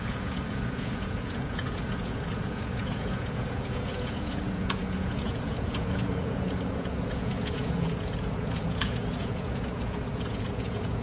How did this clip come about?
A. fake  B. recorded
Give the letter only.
A